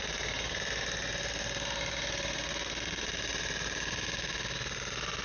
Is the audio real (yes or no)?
yes